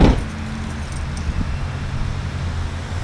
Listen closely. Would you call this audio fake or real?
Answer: real